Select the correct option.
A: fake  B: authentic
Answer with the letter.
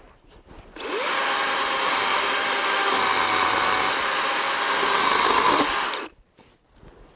B